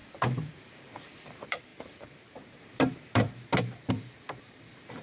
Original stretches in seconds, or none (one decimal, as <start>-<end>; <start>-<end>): 0.0-0.5